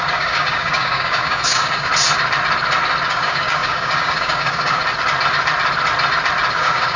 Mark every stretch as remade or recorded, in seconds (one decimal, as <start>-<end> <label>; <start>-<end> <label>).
0.0-1.9 remade; 1.9-3.1 recorded; 3.1-4.8 remade; 4.8-6.5 recorded; 6.5-7.0 remade